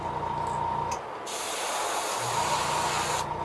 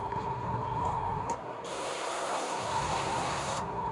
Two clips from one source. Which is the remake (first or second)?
second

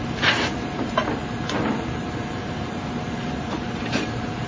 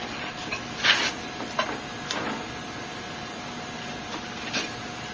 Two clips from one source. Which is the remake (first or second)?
first